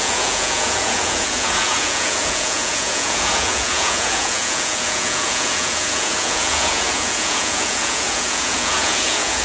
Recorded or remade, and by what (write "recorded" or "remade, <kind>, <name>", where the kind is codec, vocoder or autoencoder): remade, vocoder, Vocos